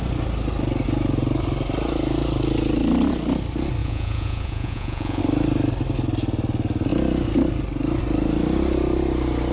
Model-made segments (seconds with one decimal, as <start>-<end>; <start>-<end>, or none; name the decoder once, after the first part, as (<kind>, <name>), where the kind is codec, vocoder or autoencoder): 3.8-5.2 (vocoder, Vocos)